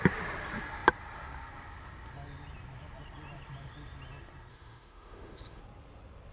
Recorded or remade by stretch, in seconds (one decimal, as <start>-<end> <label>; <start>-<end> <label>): 0.0-4.5 recorded; 4.5-5.6 remade; 5.6-6.3 recorded